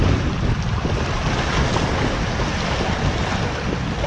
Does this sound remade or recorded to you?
recorded